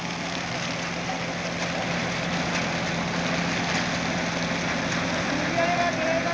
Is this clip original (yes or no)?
yes